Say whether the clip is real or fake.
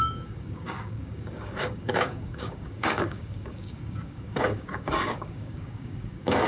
fake